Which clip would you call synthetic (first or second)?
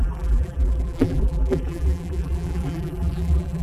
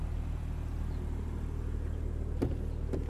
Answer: first